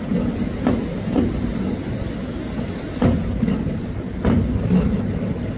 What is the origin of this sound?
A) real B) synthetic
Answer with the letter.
A